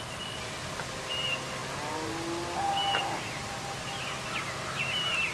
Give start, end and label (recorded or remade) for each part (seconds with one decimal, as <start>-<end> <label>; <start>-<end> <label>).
0.0-5.3 recorded